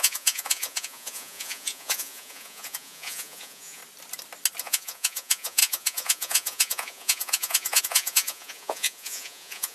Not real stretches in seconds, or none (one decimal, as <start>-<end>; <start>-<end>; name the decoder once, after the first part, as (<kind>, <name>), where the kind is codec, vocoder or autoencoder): 0.0-3.8 (vocoder, Vocos); 4.6-9.7